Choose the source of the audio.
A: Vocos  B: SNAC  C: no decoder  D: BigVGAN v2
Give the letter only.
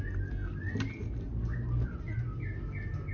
C